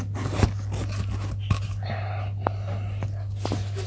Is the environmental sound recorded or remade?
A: recorded